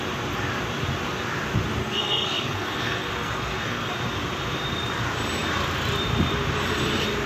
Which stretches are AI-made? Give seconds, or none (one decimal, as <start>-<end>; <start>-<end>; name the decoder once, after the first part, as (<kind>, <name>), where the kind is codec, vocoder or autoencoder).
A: 1.8-3.9 (codec, SNAC)